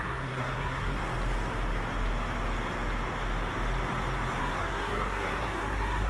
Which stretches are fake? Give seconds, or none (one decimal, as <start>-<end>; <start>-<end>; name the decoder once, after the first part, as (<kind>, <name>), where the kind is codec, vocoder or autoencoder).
0.0-1.0 (codec, SNAC); 4.4-6.1